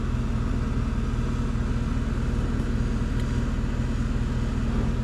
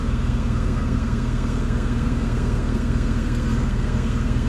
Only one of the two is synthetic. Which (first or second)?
second